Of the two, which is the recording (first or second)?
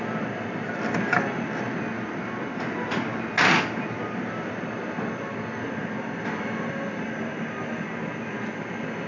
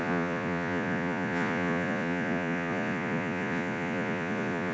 first